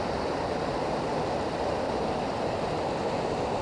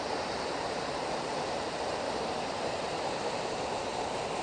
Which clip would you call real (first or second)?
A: first